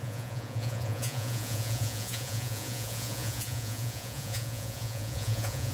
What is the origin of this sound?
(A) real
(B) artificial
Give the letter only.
B